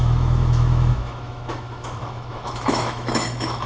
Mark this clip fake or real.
fake